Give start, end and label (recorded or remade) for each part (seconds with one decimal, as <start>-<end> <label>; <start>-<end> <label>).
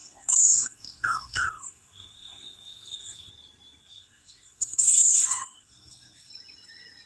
0.0-3.3 remade; 3.3-3.8 recorded; 3.8-6.3 remade; 6.3-7.1 recorded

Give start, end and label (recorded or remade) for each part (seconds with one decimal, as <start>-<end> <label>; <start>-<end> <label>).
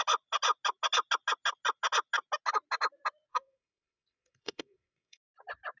0.0-3.3 recorded; 3.3-5.3 remade; 5.3-5.8 recorded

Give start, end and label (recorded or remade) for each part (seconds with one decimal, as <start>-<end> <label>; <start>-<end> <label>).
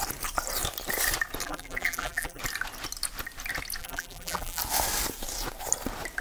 0.0-1.4 recorded; 1.4-2.4 remade; 2.4-3.8 recorded; 3.8-4.6 remade; 4.6-6.2 recorded